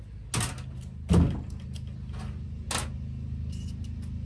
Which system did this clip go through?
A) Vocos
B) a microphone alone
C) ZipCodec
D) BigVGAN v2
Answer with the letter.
B